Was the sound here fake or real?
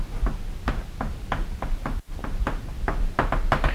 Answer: real